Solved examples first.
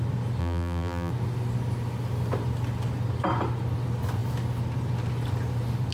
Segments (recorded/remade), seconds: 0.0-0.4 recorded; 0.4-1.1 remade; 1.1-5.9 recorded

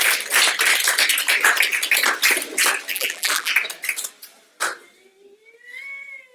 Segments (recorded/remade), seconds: 0.0-2.9 recorded; 2.9-3.5 remade; 3.5-6.3 recorded